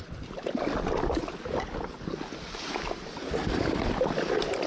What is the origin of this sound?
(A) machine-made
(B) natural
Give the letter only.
B